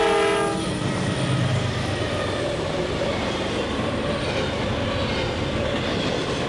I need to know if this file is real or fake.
real